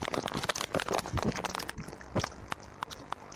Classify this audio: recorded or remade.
recorded